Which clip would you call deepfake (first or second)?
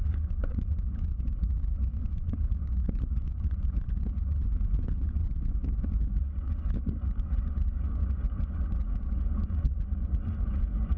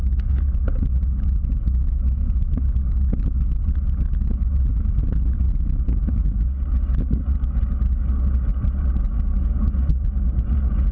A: first